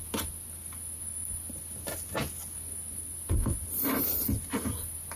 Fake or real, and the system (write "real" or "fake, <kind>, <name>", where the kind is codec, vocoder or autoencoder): real